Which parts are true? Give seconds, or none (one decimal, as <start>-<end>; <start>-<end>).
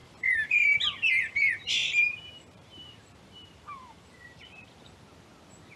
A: 0.8-1.8; 4.7-5.8